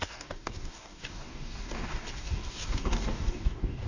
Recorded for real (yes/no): no